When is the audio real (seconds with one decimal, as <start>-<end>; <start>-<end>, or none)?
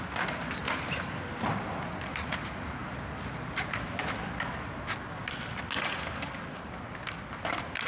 0.0-7.9